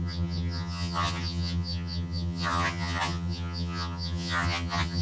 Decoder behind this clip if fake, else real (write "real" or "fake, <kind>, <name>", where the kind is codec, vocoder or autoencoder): fake, vocoder, HiFi-GAN